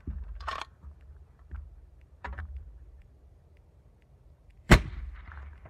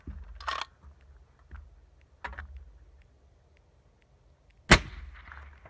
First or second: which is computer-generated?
first